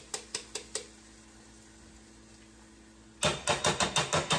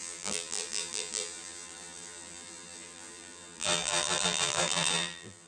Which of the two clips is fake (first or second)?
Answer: second